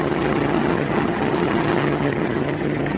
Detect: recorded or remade remade